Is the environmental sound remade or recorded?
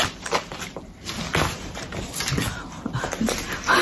recorded